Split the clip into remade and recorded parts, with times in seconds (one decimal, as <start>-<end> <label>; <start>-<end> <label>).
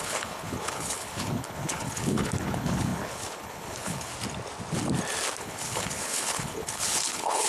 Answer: 0.0-4.1 remade; 4.1-5.4 recorded; 5.4-7.5 remade